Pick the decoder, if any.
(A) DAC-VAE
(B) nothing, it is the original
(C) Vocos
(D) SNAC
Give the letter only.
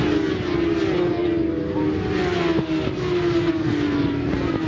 B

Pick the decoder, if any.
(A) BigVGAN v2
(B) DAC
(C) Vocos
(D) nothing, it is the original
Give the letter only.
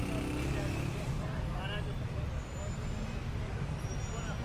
D